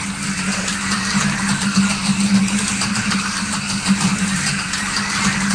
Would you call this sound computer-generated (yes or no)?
no